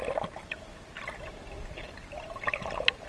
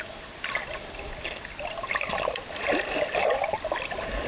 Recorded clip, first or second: first